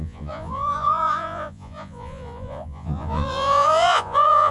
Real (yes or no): no